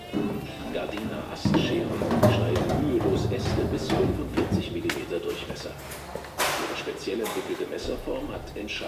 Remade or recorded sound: recorded